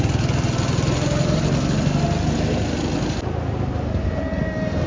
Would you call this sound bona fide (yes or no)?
yes